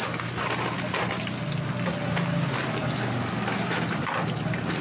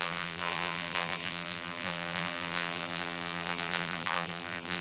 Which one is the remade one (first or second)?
second